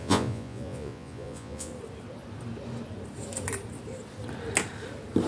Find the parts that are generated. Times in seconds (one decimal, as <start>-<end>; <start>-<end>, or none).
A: 0.0-1.7